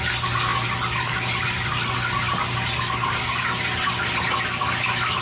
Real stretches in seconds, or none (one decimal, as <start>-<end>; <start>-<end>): 0.0-5.2

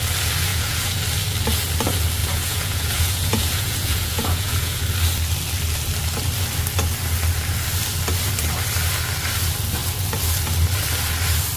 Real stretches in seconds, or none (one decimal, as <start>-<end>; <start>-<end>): 0.0-0.5; 1.0-2.2; 4.8-11.6

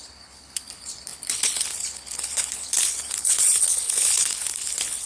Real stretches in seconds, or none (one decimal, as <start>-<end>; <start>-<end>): none

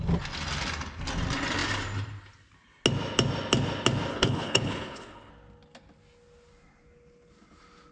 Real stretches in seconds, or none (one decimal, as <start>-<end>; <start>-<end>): 0.0-4.1; 5.3-7.9

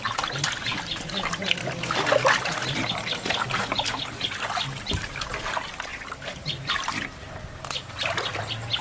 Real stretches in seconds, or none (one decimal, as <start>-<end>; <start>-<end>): 0.0-8.8

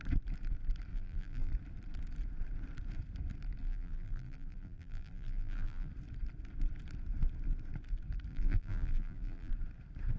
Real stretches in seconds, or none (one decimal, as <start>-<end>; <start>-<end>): 0.0-0.9; 1.5-3.6; 5.9-8.3; 9.5-10.2